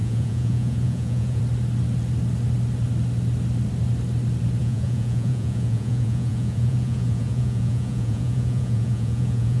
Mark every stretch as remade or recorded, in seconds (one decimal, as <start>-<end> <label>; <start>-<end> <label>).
0.0-1.4 remade; 1.4-4.6 recorded; 4.6-9.6 remade